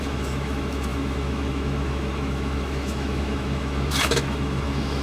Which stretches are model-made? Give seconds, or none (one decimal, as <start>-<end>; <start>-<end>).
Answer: 0.0-5.0